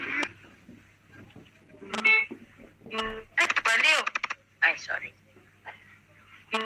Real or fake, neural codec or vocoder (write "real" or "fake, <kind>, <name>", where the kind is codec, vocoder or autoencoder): real